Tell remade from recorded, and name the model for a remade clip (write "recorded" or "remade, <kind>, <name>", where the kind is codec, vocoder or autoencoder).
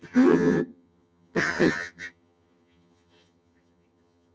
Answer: remade, vocoder, HiFi-GAN